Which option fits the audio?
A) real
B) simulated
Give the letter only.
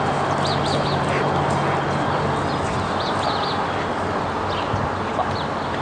A